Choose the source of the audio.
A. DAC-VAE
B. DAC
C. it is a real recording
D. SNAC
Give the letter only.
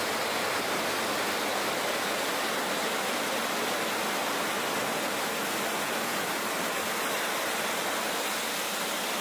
C